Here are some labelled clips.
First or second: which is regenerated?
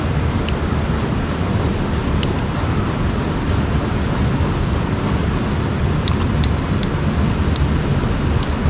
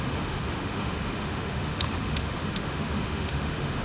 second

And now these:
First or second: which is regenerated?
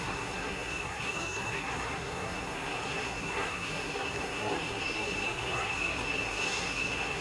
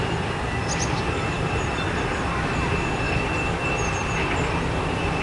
first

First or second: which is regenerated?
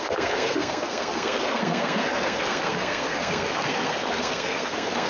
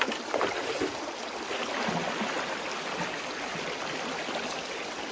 first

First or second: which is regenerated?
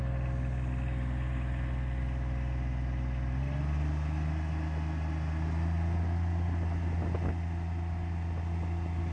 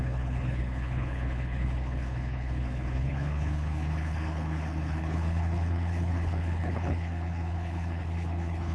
second